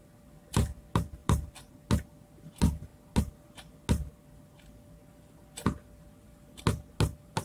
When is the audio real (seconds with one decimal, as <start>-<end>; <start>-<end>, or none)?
0.0-1.2; 1.7-7.4